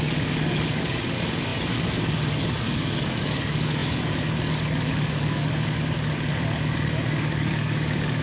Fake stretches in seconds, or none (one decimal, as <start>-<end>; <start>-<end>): 0.0-8.2